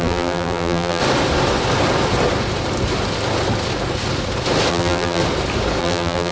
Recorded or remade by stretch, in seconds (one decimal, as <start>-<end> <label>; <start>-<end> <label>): 0.0-1.0 remade; 1.0-4.7 recorded; 4.7-5.2 remade; 5.2-5.8 recorded; 5.8-6.3 remade

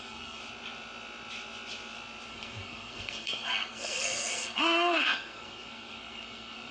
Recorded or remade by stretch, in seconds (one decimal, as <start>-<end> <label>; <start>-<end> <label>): 0.0-0.4 remade; 0.4-2.3 recorded; 2.3-6.7 remade

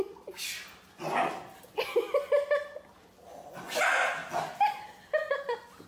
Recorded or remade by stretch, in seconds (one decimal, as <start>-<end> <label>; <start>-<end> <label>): 0.0-5.9 recorded

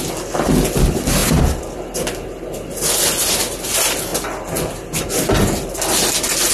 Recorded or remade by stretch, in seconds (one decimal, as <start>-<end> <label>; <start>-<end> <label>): 0.0-6.5 recorded

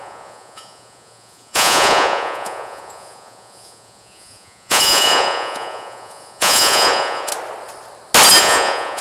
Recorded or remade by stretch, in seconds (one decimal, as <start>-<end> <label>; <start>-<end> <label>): 0.0-7.3 remade; 7.3-8.4 recorded; 8.4-9.0 remade

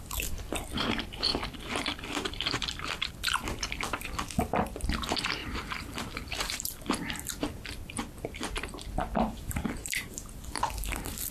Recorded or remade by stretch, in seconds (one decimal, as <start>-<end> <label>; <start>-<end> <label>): 0.0-1.3 recorded; 1.3-3.1 remade; 3.1-5.4 recorded; 5.4-10.1 remade; 10.1-11.3 recorded